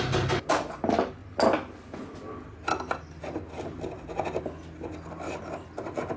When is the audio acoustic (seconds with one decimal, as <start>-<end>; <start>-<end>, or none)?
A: 0.0-6.2